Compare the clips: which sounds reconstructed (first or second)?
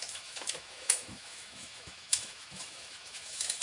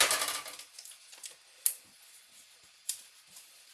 first